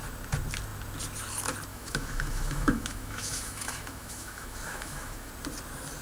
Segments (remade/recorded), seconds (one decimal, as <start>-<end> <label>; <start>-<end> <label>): 0.0-1.7 recorded; 1.7-5.3 remade; 5.3-6.0 recorded